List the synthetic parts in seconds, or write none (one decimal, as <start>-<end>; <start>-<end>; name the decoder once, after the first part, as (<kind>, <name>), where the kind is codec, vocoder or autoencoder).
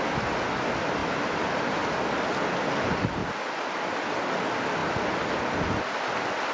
3.2-3.9 (vocoder, BigVGAN v2)